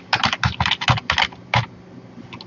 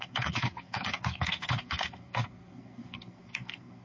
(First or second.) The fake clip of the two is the second